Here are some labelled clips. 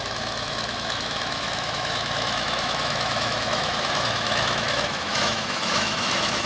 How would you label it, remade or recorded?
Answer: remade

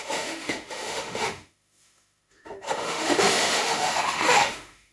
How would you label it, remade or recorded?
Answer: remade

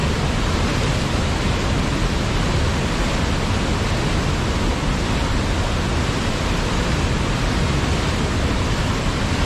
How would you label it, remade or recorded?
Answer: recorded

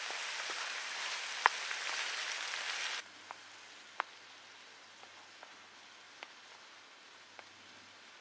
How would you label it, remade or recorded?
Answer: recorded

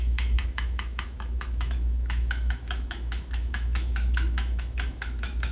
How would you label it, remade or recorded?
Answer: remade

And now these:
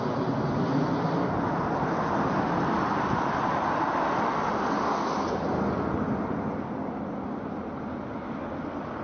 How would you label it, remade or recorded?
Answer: recorded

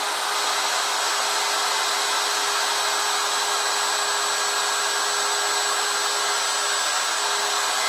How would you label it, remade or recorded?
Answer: recorded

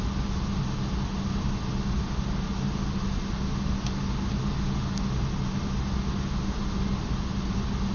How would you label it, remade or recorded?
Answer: recorded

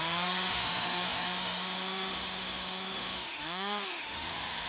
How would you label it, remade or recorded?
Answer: remade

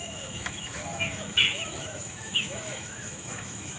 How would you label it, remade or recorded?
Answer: remade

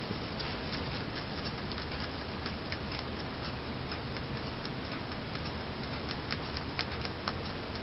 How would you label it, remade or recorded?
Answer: recorded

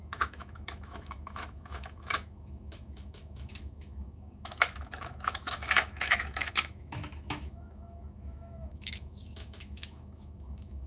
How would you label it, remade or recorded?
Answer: remade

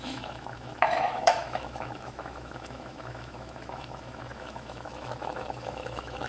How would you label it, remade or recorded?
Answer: remade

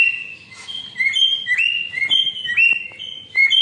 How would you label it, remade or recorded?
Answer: recorded